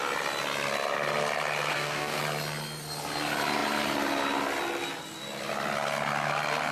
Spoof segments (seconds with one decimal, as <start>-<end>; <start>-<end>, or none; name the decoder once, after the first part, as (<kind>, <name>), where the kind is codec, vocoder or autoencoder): 1.7-2.2 (codec, DAC)